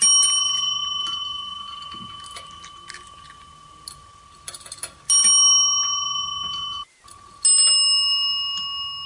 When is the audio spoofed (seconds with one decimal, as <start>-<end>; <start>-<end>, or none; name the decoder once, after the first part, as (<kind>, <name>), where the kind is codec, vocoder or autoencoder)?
none